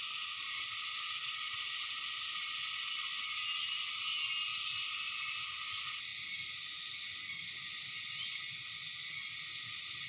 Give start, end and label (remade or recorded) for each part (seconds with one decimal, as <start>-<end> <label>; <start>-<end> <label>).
0.0-10.1 recorded